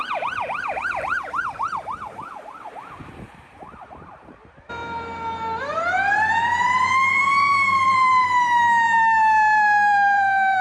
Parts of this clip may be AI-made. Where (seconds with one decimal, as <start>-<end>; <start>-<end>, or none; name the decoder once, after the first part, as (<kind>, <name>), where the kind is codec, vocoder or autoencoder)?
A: 0.0-4.8 (vocoder, BigVGAN v2); 5.6-10.6